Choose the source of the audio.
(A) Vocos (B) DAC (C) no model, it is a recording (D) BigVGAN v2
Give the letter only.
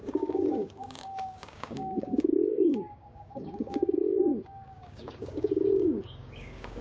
B